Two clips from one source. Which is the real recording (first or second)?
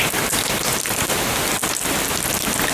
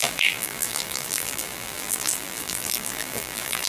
first